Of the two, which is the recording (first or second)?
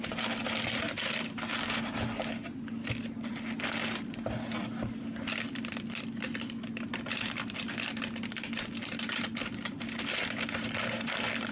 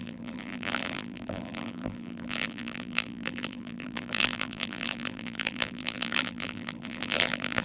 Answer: first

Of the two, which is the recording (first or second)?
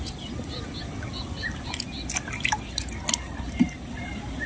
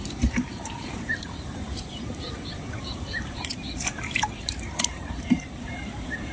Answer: first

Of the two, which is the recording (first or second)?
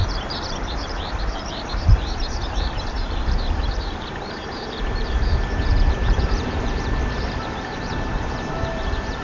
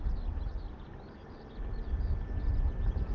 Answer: second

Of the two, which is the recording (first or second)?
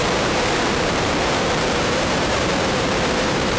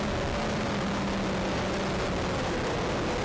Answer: second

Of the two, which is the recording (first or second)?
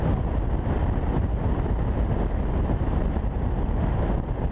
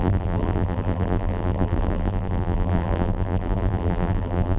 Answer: first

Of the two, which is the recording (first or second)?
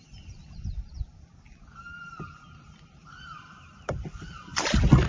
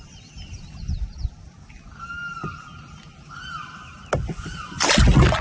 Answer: second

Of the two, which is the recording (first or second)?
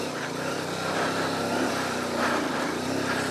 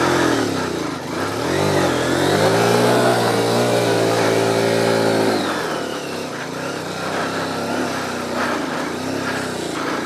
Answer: second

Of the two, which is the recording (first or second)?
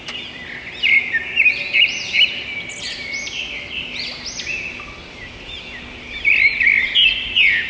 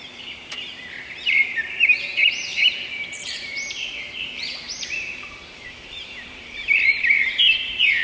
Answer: first